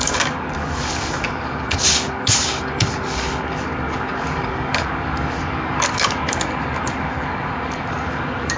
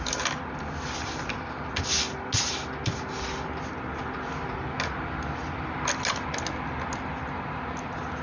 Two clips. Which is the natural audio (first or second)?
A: second